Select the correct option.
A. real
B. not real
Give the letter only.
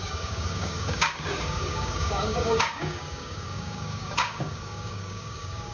B